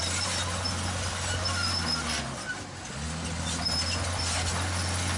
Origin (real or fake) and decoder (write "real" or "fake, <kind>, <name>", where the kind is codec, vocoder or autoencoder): real